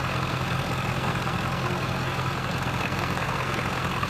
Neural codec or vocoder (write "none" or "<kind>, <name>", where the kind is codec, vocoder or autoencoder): codec, SNAC